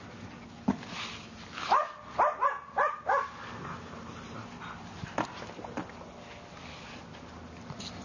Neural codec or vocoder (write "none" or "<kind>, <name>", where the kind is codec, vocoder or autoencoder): none